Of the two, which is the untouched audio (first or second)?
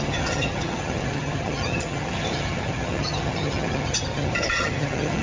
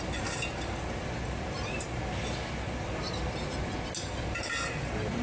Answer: second